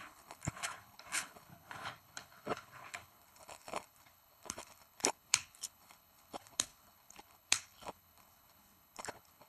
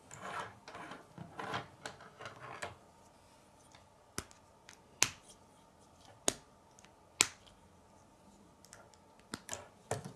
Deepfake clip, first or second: first